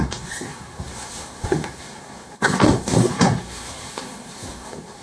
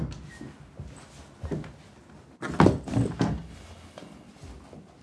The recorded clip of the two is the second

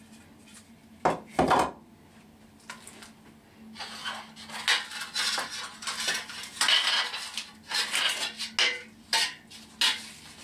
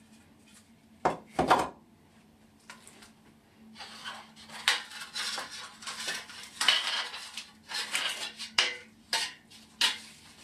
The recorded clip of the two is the first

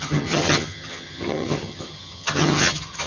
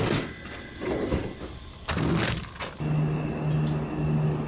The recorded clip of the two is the second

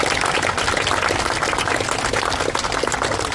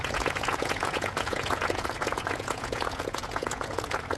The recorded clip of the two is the first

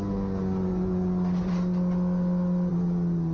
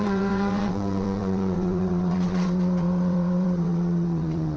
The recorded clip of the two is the first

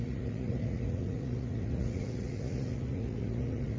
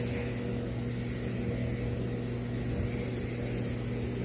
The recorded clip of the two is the second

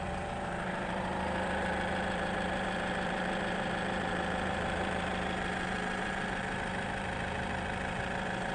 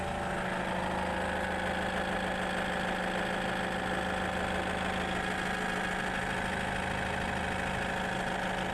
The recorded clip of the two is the second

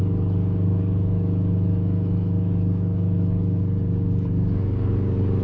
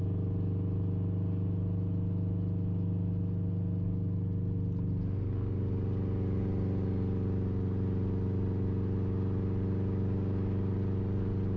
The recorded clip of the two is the second